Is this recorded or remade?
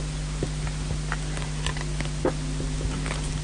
recorded